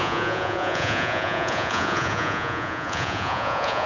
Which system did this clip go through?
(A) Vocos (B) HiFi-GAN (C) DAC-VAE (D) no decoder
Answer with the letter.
A